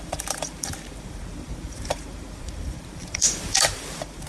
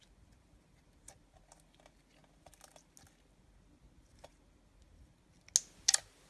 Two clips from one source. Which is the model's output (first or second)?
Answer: first